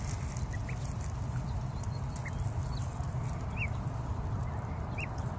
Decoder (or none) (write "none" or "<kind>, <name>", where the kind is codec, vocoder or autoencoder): none